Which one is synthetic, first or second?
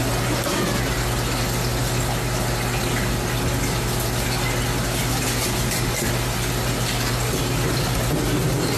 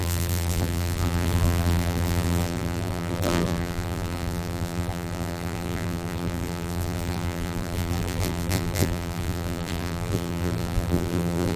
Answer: second